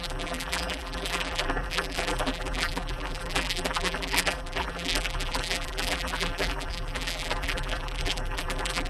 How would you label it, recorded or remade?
remade